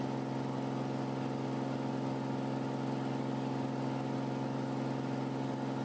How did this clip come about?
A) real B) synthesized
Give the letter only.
A